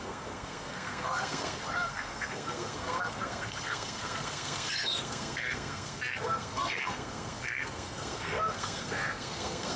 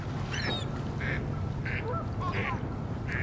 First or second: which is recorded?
second